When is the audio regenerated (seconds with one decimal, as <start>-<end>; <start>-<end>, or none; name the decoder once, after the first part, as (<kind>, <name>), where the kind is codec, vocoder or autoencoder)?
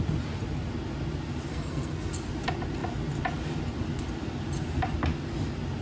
1.5-2.1 (codec, SNAC)